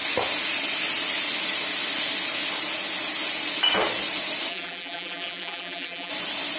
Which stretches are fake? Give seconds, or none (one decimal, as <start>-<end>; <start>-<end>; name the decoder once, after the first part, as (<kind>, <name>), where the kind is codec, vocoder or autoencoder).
4.5-6.1 (vocoder, BigVGAN v2)